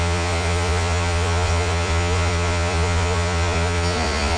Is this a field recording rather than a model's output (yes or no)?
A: no